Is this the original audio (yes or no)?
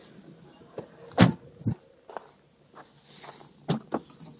yes